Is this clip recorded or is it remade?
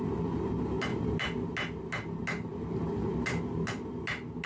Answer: recorded